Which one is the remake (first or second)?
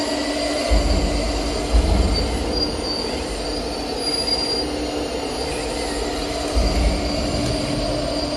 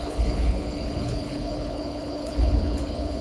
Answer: second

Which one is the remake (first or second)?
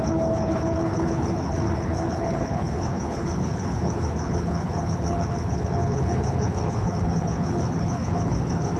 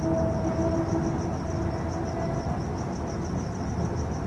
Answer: first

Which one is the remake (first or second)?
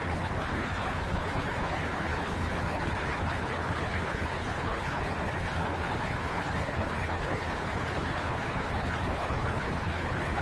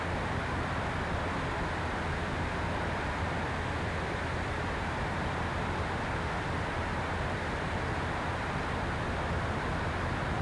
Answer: first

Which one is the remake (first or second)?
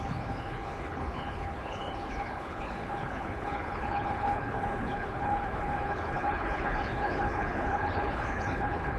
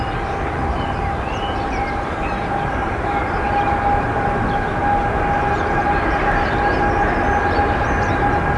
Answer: first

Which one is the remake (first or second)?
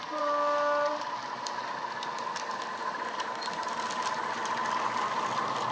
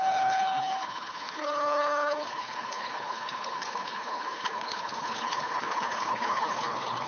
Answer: second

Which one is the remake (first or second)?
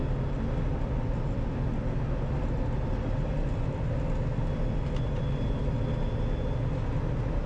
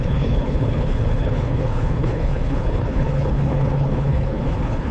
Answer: second